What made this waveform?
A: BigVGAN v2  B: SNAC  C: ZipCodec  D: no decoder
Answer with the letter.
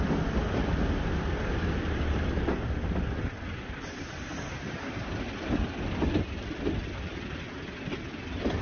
D